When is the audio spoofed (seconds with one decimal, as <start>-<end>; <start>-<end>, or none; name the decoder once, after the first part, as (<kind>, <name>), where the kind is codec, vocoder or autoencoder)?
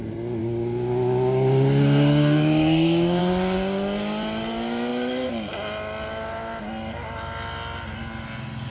0.4-3.2 (codec, DAC)